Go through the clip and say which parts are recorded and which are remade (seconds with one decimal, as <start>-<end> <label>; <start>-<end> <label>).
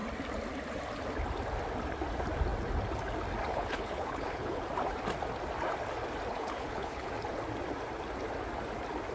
0.0-3.5 recorded; 3.5-4.6 remade; 4.6-6.3 recorded; 6.3-7.1 remade; 7.1-9.1 recorded